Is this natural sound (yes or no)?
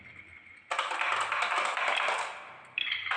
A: yes